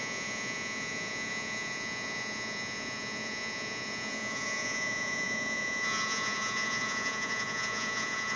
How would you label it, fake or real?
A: fake